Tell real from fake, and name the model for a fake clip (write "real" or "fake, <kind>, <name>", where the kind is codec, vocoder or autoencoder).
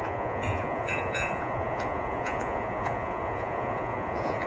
fake, vocoder, Vocos